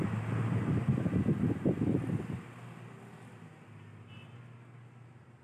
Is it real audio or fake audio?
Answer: real